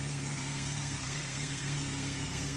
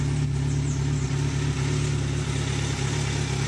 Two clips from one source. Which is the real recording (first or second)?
second